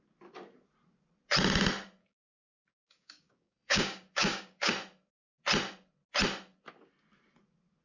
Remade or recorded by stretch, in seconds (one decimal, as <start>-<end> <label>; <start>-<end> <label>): 0.0-2.0 recorded; 2.0-4.7 remade; 4.7-7.8 recorded